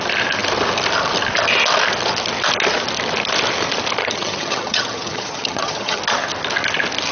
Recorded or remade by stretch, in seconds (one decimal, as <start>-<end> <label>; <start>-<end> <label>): 0.0-4.0 recorded; 4.0-6.0 remade; 6.0-7.1 recorded